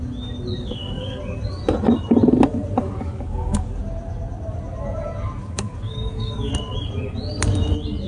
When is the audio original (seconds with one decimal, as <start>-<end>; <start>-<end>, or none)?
0.0-0.6; 1.2-2.8; 3.8-5.4; 6.5-8.1